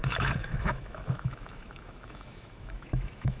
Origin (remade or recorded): remade